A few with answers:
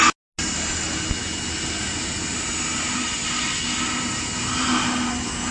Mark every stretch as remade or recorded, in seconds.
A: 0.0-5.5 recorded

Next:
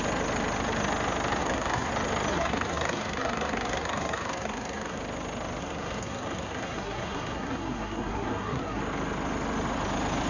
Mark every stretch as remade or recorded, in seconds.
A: 0.0-1.4 recorded; 1.4-1.9 remade; 1.9-2.3 recorded; 2.3-5.0 remade; 5.0-5.6 recorded; 5.6-8.8 remade; 8.8-10.3 recorded